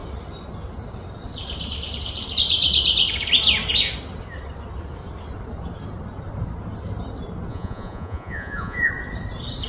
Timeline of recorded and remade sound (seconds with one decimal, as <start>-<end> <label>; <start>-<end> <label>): 0.0-7.5 recorded; 7.5-8.9 remade; 8.9-9.7 recorded